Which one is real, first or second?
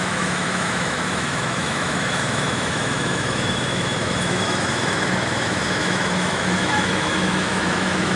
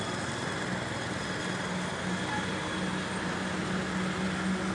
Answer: second